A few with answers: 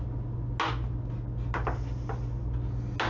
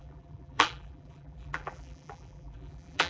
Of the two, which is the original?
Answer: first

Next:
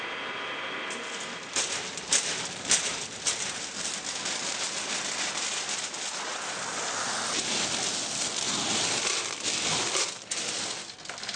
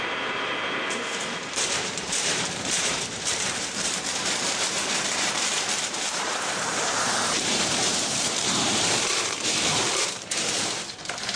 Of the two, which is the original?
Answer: first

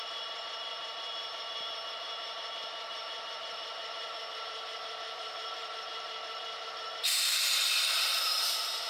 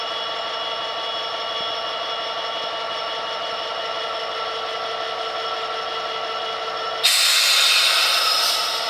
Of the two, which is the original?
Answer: second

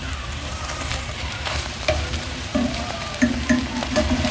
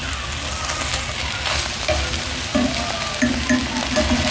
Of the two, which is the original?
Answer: second